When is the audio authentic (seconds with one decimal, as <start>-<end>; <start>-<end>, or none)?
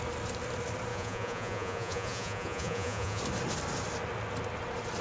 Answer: 0.0-0.9; 3.2-5.0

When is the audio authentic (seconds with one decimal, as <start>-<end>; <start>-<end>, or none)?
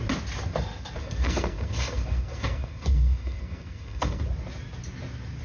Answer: 0.0-1.0; 4.2-5.4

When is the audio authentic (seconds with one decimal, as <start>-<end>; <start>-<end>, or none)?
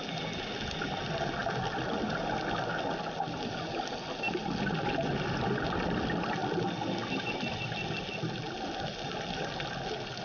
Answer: 0.0-10.2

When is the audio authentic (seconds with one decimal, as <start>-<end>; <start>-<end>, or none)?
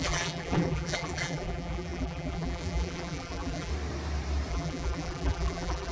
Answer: 3.7-4.5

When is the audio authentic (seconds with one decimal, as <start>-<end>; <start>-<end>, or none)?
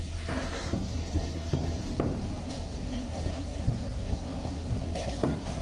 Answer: 1.8-2.4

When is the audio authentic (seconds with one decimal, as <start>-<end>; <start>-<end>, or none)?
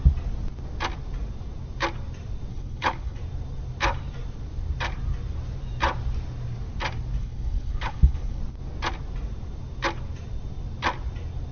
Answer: 0.0-2.5; 3.2-7.2; 8.4-11.5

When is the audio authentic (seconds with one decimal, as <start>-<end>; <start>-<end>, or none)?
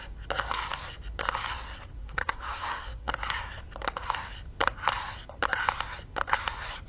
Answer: 0.0-2.0; 3.1-6.9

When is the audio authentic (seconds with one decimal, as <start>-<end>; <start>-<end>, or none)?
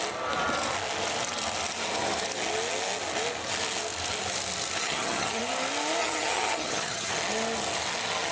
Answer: 0.0-4.8; 5.4-6.0; 7.1-8.3